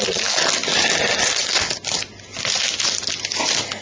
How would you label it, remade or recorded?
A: recorded